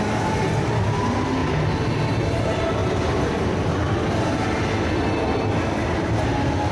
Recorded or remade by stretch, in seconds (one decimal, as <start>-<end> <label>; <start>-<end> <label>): 0.0-6.7 recorded